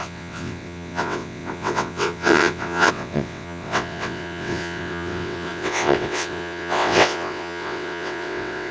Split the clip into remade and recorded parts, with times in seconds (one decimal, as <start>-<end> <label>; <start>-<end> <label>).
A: 0.0-8.7 remade